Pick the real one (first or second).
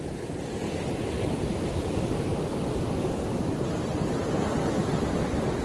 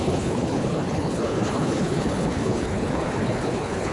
first